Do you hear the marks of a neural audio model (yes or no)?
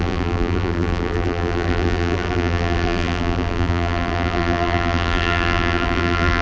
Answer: yes